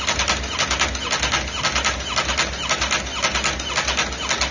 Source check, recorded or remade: recorded